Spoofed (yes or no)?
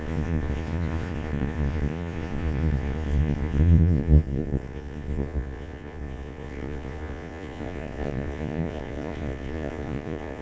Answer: yes